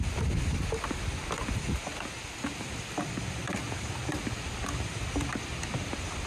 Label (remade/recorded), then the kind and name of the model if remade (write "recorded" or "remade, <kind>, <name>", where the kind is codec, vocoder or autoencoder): recorded